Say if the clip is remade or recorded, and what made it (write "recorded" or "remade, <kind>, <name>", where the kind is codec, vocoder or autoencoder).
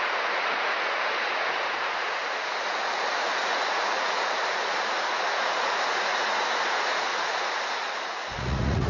remade, vocoder, Vocos